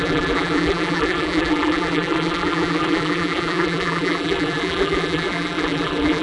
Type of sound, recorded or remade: remade